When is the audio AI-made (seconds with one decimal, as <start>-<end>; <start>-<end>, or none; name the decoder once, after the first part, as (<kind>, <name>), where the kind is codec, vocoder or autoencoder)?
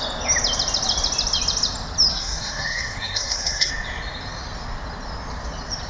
2.1-3.7 (codec, SNAC)